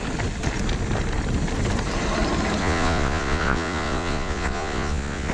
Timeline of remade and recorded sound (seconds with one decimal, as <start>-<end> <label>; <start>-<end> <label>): 0.0-2.6 recorded; 2.6-5.3 remade